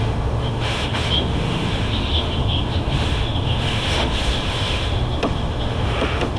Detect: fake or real fake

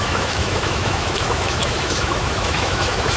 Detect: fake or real fake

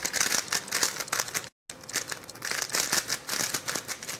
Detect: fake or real real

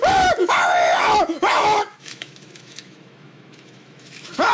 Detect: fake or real fake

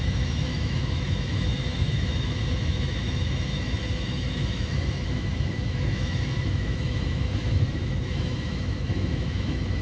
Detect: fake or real fake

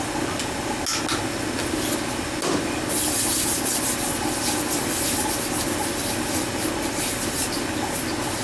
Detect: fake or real real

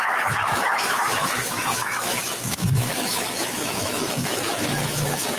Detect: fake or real fake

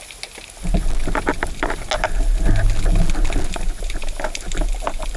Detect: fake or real real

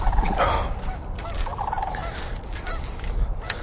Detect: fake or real real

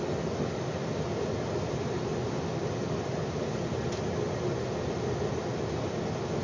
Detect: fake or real real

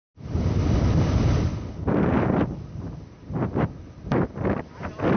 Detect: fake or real real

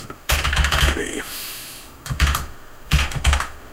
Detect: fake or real fake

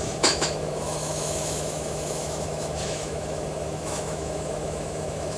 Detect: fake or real fake